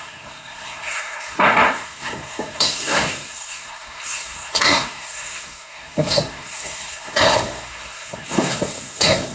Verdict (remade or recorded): remade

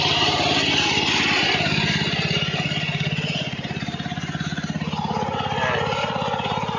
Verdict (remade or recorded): recorded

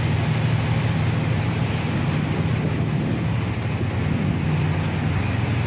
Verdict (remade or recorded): recorded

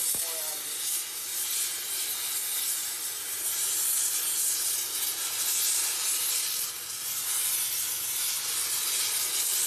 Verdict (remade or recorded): recorded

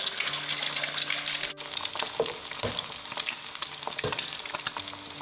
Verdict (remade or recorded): recorded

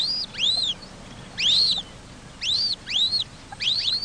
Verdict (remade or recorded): recorded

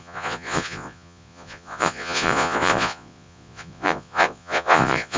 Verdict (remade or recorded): remade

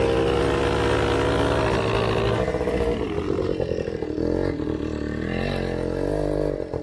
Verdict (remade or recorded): recorded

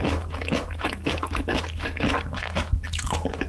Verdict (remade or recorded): remade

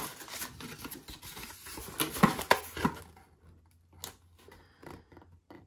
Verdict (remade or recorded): recorded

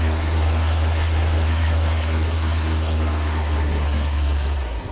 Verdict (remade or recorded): remade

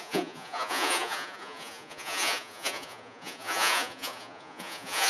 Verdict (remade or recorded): remade